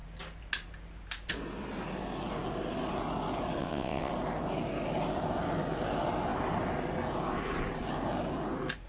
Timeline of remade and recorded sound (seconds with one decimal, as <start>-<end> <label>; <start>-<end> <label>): 0.0-3.6 recorded; 3.6-4.1 remade; 4.1-8.9 recorded